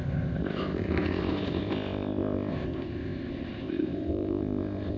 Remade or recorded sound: remade